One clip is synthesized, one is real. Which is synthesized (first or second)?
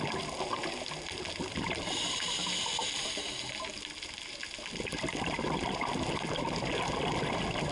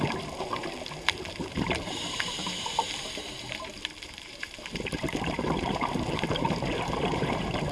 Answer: second